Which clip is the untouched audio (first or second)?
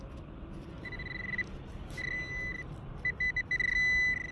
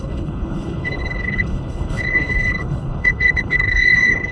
first